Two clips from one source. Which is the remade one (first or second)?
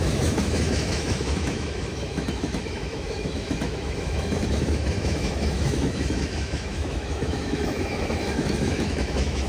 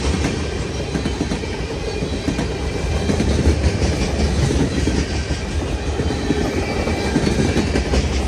first